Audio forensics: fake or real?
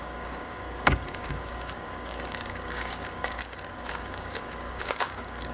fake